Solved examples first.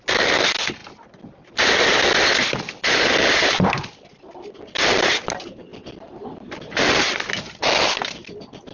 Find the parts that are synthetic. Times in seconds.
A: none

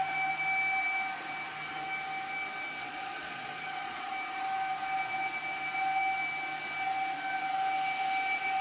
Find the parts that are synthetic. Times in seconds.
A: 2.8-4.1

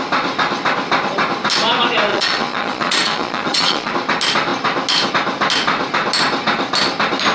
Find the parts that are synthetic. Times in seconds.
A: 2.1-3.9

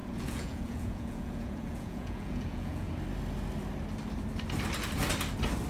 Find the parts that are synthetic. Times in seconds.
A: 0.0-2.9

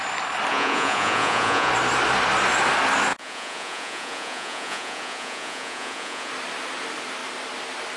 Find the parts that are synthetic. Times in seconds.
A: 0.5-1.7; 3.1-6.3

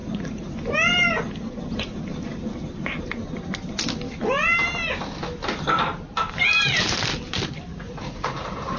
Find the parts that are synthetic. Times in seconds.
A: 0.0-0.5; 7.7-8.8